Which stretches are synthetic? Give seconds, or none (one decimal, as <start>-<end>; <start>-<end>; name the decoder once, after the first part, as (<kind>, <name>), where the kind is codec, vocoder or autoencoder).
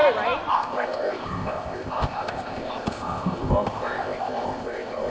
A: 0.5-5.1 (codec, ZipCodec)